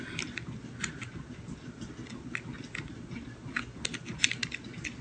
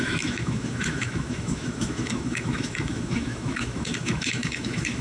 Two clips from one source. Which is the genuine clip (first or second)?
first